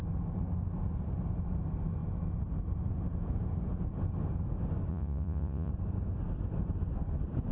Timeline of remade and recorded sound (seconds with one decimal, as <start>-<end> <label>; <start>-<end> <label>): 0.0-4.9 recorded; 4.9-5.7 remade; 5.7-7.5 recorded